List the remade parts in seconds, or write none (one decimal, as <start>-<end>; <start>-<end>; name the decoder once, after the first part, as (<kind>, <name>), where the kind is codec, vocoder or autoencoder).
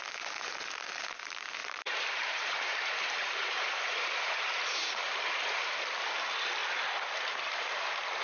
1.6-5.7 (vocoder, BigVGAN v2)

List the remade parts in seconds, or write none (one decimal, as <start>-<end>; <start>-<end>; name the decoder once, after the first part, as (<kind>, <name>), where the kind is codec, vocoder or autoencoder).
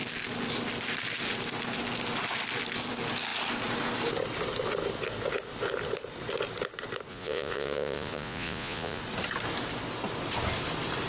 7.1-9.0 (vocoder, Vocos)